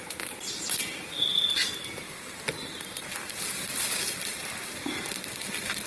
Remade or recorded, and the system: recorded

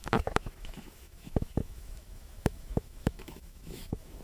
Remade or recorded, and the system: remade, autoencoder, DAC-VAE